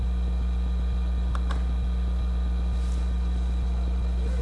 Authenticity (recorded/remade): recorded